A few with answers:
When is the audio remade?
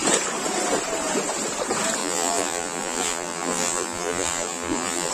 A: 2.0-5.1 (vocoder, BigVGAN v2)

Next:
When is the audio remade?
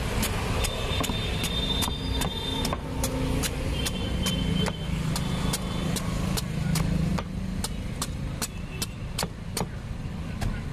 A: none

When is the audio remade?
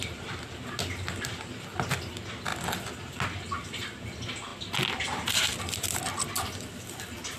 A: none